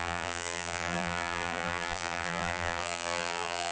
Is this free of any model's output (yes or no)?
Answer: no